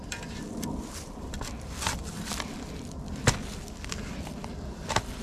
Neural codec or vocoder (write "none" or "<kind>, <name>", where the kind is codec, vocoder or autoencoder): vocoder, BigVGAN v2